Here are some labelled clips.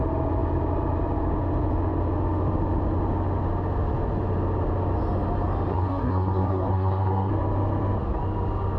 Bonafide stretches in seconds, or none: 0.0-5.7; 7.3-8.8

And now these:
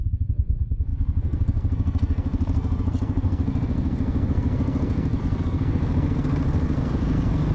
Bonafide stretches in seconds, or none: none

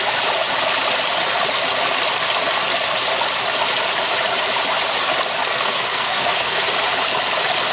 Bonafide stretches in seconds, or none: 0.0-5.4; 6.6-7.7

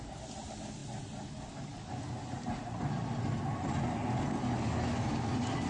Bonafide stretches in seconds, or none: 0.0-5.7

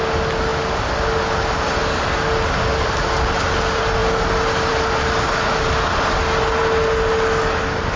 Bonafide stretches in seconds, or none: 0.0-8.0

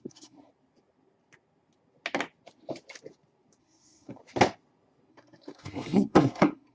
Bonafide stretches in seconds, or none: 0.5-3.6; 4.2-5.1

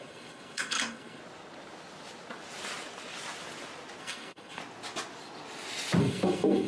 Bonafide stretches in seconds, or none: 1.2-4.0; 4.6-6.0

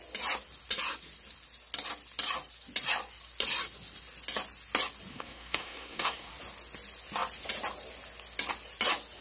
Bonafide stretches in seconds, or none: 0.0-5.1; 6.3-9.2